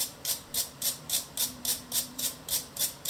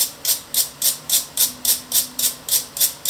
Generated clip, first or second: first